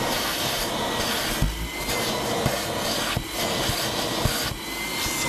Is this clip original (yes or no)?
yes